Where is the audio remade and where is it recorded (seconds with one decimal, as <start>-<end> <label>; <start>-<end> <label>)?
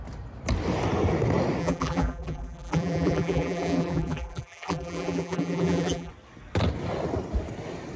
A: 0.0-1.6 recorded; 1.6-6.1 remade; 6.1-8.0 recorded